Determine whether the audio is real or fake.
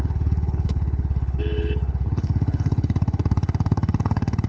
fake